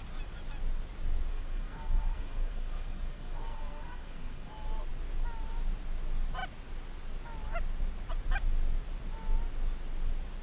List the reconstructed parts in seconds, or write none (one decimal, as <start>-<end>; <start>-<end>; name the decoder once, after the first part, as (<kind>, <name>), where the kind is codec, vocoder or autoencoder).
1.3-4.5 (codec, SNAC)